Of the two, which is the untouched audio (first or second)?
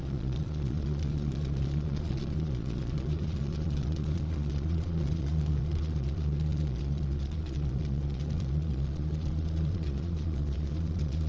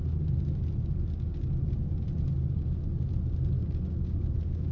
second